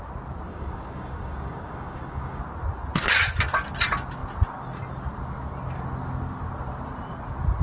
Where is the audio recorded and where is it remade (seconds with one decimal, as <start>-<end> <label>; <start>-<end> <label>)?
0.0-0.5 recorded; 0.5-2.4 remade; 2.4-7.6 recorded